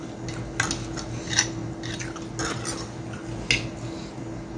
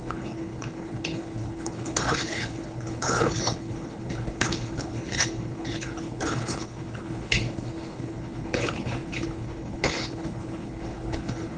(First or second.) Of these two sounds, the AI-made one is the second